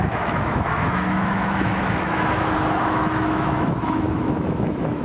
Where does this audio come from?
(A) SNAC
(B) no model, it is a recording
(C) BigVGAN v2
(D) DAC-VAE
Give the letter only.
D